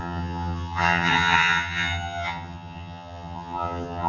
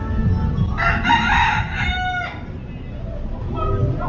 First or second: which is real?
second